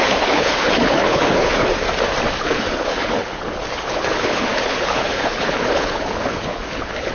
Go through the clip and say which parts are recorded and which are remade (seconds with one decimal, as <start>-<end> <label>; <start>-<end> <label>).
0.0-1.7 remade; 1.7-2.4 recorded; 2.4-7.1 remade